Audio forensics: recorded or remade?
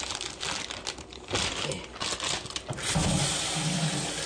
recorded